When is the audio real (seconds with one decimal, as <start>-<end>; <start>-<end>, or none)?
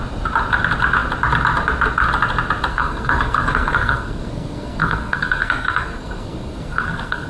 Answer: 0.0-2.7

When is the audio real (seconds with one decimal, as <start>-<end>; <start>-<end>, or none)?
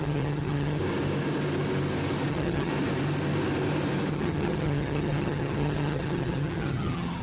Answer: 0.8-2.3; 2.7-4.1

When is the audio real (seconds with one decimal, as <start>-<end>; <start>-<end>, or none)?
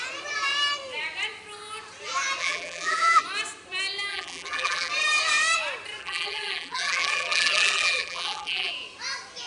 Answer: 0.0-2.4; 3.2-4.1; 4.9-6.0; 8.7-9.5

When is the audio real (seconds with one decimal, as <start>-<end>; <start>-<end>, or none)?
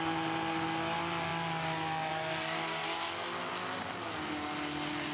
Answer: 0.0-5.1